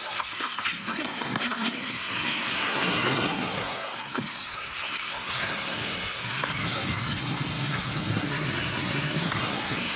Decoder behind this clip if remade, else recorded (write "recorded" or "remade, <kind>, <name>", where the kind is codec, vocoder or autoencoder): remade, codec, SNAC